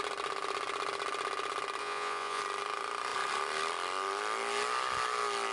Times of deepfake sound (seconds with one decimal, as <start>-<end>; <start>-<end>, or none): 1.8-2.4